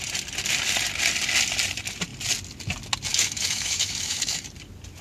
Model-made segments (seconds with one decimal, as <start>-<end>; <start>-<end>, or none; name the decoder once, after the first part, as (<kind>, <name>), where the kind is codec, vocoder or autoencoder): 3.1-4.4 (autoencoder, DAC-VAE)